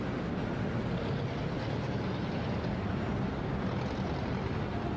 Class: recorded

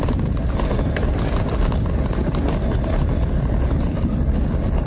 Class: recorded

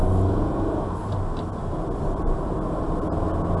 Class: recorded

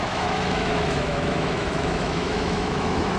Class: remade